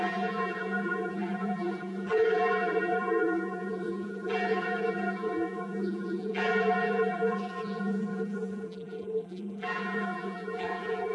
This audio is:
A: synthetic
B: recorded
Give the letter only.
A